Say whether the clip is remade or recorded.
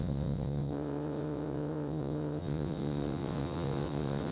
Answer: remade